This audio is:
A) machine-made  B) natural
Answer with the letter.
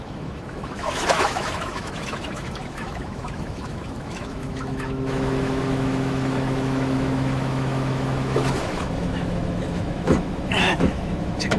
A